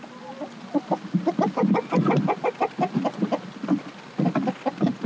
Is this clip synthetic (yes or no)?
no